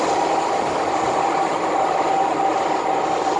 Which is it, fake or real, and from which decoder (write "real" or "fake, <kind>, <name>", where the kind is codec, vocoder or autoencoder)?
fake, vocoder, BigVGAN v2